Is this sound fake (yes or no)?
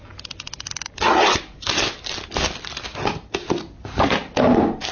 no